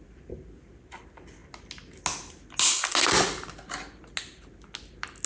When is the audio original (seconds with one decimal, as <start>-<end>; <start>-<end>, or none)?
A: 0.0-5.3